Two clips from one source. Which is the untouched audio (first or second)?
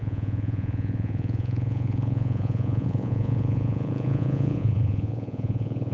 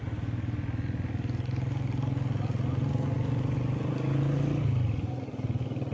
second